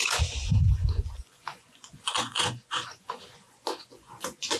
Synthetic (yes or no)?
yes